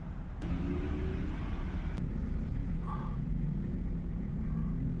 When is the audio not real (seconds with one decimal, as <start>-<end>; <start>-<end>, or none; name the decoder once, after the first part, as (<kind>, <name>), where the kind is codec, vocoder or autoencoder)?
2.6-4.3 (vocoder, Vocos)